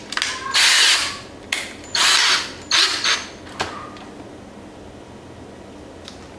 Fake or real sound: real